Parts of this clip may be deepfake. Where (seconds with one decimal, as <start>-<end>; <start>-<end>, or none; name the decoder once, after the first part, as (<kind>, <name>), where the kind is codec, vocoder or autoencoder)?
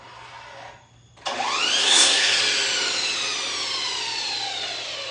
1.8-2.4 (codec, SNAC)